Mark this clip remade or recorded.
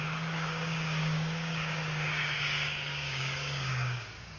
remade